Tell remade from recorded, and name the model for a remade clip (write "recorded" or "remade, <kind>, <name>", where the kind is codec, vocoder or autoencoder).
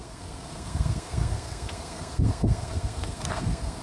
remade, codec, SNAC